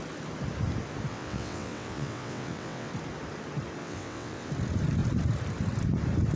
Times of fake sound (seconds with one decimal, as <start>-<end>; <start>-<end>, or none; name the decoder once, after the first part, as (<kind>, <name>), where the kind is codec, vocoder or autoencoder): 1.1-2.9 (vocoder, WaveNeXt); 3.8-4.5